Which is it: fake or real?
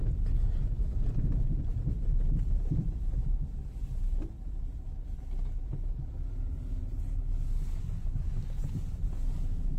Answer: real